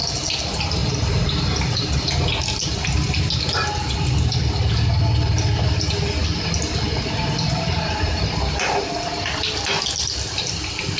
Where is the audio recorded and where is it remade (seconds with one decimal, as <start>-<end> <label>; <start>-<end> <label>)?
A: 0.0-11.0 recorded